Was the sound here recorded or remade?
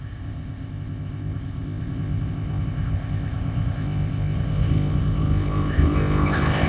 remade